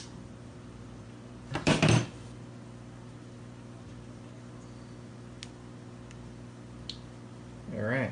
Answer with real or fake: real